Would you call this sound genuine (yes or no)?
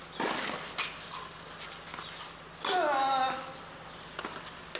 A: yes